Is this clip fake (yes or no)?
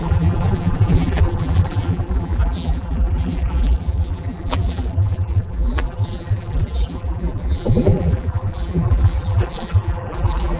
yes